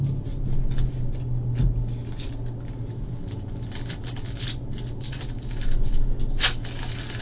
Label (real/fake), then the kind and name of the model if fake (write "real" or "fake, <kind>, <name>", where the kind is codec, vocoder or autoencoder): real